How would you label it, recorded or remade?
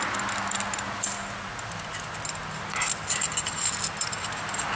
recorded